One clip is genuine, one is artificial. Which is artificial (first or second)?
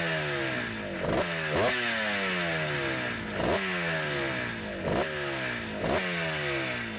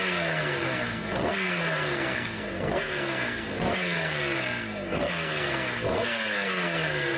second